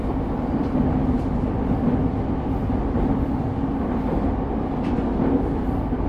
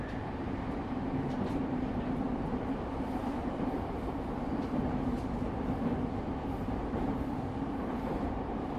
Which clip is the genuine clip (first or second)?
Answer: first